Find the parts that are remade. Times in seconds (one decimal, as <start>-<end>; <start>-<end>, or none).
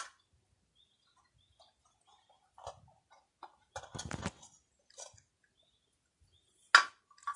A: 2.1-2.8